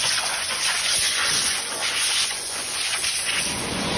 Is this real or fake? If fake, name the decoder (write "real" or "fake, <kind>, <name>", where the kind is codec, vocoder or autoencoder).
fake, vocoder, Vocos